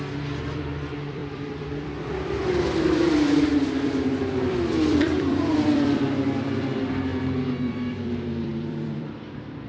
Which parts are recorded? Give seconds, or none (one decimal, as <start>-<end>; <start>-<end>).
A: none